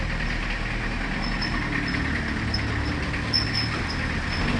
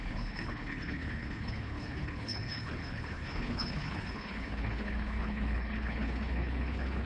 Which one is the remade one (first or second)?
second